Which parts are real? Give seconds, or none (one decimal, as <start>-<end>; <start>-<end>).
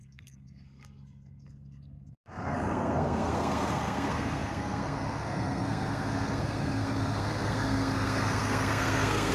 none